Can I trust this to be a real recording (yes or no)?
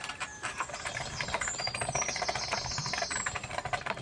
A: yes